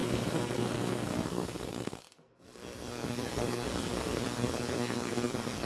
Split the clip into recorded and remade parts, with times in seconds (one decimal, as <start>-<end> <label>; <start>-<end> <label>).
0.0-5.7 remade